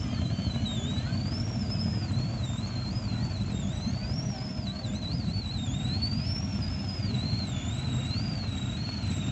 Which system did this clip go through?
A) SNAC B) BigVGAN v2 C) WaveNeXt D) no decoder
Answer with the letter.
D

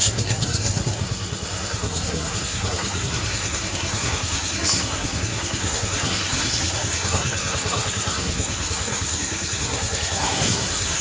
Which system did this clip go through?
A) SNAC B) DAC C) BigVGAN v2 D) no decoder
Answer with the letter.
A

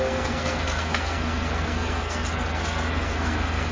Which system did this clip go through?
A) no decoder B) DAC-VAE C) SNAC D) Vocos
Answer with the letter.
C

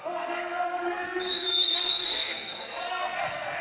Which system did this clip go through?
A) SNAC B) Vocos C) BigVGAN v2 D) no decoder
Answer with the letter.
A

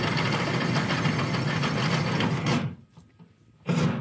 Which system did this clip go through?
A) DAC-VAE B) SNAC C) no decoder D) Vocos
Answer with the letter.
C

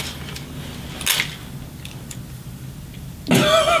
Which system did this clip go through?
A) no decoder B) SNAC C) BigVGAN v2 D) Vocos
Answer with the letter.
A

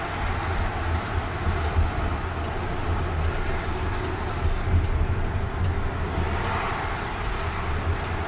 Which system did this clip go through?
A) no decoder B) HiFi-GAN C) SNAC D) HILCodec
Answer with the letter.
A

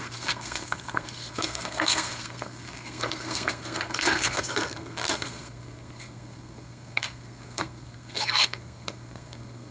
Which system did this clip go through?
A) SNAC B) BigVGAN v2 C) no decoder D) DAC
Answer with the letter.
A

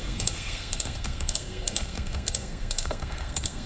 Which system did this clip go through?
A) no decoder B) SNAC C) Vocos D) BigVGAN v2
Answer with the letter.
B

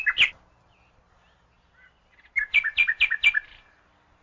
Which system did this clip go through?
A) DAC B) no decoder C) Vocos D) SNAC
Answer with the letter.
B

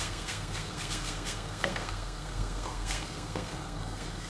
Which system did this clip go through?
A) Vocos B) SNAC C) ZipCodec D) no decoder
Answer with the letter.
B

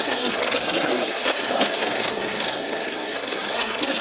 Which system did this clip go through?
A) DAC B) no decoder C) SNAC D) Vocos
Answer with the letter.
C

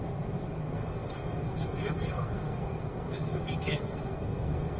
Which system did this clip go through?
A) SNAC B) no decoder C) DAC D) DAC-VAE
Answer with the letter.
A